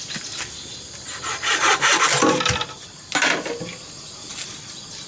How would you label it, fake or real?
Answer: real